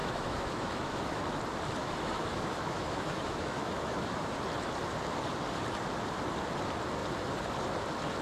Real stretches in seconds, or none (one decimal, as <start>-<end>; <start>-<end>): 1.2-1.8; 4.2-8.2

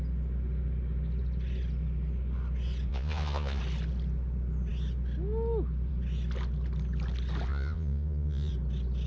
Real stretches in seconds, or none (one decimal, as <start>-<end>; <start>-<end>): 0.0-2.9; 3.6-7.5; 8.5-9.1

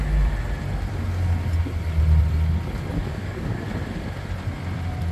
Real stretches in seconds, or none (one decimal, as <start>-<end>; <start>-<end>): 0.0-3.0; 3.6-5.1

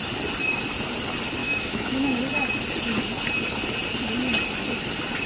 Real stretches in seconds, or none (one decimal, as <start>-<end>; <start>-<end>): 0.0-1.4; 2.2-5.3

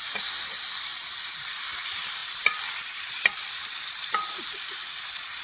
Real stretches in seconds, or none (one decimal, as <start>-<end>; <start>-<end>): none

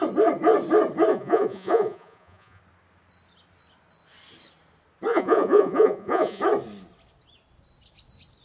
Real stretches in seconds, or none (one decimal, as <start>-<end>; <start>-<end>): 0.0-1.1; 2.6-5.1; 6.4-8.4

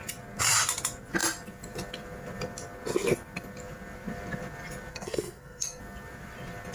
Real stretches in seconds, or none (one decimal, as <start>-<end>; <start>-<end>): 0.0-4.9; 5.8-6.7

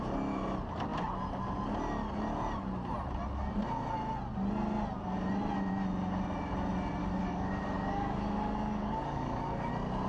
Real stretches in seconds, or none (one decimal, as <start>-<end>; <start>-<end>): 0.0-7.0; 9.7-10.1